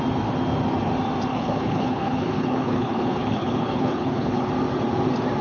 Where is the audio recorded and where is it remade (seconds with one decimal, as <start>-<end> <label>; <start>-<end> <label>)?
0.0-1.3 recorded; 1.3-4.5 remade; 4.5-5.4 recorded